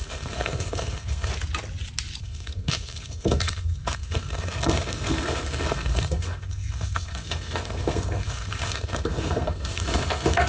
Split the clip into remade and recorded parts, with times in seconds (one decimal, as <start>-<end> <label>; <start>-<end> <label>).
0.0-1.3 remade; 1.3-2.2 recorded; 2.2-10.5 remade